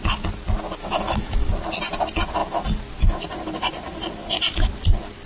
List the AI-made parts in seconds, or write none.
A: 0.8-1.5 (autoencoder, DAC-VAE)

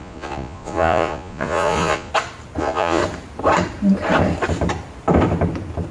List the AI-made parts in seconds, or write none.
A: 0.0-2.1 (vocoder, Vocos); 2.6-3.0

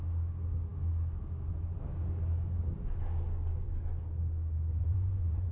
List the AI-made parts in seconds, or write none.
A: 4.7-5.5 (vocoder, Vocos)